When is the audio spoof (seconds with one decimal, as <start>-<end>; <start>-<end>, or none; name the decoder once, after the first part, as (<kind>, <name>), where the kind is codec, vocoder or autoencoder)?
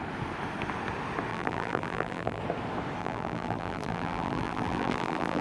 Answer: 1.3-2.4 (vocoder, BigVGAN v2); 3.0-5.4